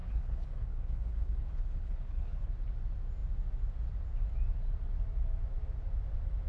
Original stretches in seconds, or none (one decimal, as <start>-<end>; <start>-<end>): 2.5-6.5